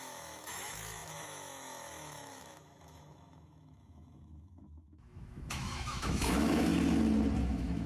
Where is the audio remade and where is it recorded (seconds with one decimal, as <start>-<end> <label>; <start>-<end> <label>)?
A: 0.0-6.7 remade; 6.7-7.5 recorded; 7.5-7.9 remade